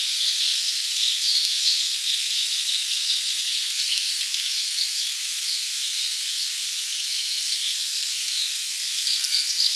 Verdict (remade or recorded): remade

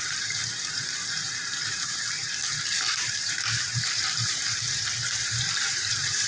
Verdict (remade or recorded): remade